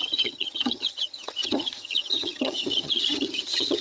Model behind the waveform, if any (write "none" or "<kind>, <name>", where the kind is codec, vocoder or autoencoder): vocoder, HiFi-GAN